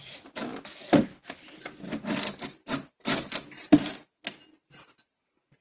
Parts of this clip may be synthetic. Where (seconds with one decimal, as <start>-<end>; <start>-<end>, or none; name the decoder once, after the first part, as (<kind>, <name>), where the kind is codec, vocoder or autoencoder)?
none